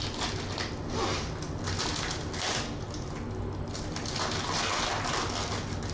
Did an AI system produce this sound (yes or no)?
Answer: no